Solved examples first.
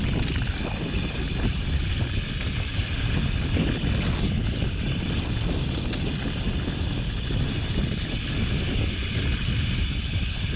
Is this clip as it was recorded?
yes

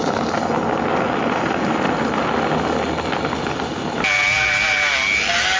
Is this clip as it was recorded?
yes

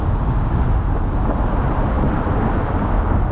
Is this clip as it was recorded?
yes